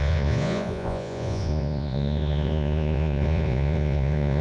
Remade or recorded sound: remade